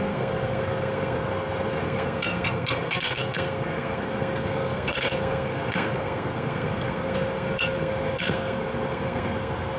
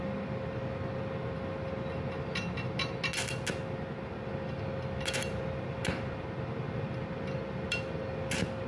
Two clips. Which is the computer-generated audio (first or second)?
first